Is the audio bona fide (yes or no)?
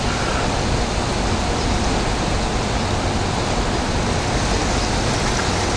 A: yes